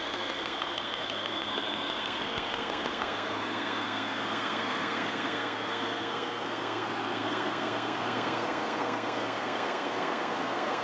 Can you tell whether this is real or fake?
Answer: fake